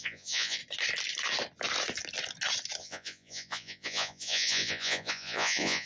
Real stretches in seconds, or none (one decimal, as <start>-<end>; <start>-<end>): 0.6-2.8